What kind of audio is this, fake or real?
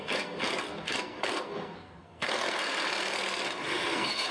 fake